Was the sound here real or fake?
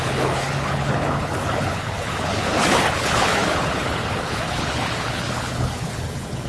fake